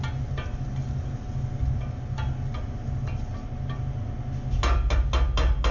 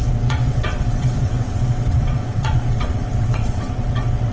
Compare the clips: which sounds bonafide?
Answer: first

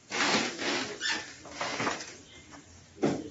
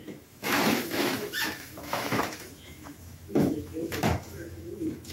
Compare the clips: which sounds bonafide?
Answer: first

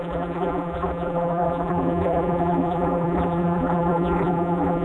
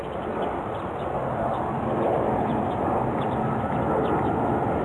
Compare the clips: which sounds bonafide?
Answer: second